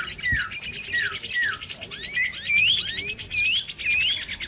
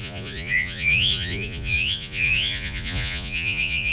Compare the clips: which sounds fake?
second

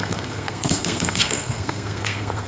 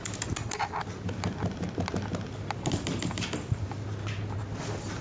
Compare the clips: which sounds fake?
first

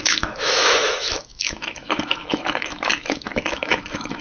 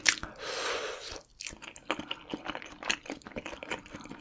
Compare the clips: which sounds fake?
first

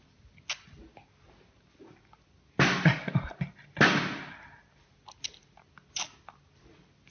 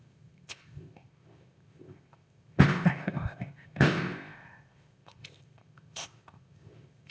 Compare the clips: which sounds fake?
second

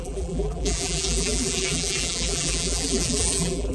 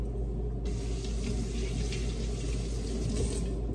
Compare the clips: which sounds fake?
first